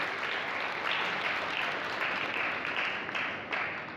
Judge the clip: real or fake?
real